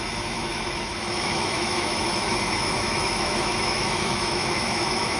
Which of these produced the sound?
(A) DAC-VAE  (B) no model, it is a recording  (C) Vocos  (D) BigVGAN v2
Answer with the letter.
A